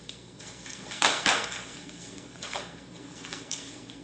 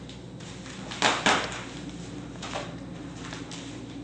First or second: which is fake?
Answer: first